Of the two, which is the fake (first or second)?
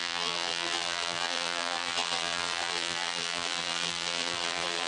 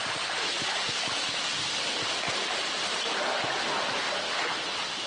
first